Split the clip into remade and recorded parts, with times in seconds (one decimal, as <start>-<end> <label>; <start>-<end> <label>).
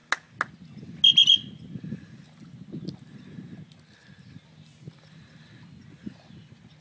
0.0-6.8 recorded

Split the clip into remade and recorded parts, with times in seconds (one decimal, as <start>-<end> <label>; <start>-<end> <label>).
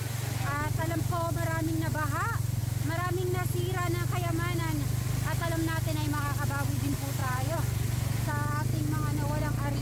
0.0-7.2 recorded; 7.2-8.3 remade; 8.3-9.8 recorded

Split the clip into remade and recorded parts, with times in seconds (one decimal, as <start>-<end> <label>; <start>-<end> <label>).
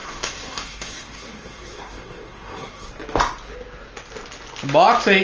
0.0-2.9 remade; 2.9-5.2 recorded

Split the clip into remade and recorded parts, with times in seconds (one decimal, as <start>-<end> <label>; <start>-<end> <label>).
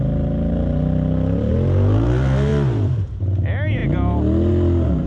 0.0-5.1 recorded